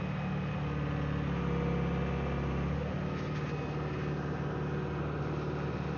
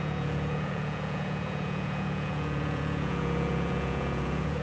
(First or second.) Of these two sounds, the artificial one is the second